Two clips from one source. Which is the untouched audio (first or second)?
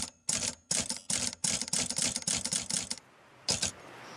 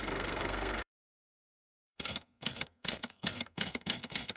first